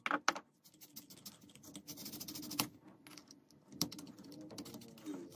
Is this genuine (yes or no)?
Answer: yes